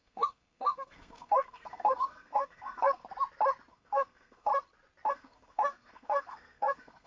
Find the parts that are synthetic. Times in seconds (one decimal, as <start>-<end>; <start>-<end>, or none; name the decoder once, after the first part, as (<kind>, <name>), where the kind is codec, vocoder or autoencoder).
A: 0.0-3.0 (codec, SNAC); 3.7-4.5; 5.1-7.1